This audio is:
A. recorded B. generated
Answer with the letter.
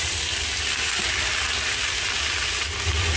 A